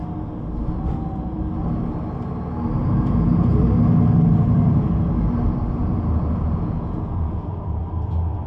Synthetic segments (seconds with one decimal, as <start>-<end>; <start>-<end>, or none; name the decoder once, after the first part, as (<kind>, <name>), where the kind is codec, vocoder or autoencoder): 2.8-3.6 (vocoder, Vocos); 5.8-7.8